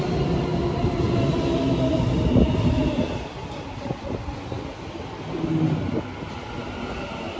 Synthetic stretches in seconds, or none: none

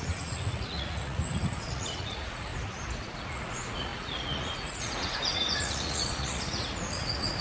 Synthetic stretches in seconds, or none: 0.0-2.5 (vocoder, Vocos); 3.0-7.4

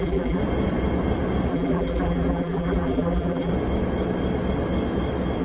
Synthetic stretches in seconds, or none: 0.0-0.4 (vocoder, BigVGAN v2); 1.5-3.5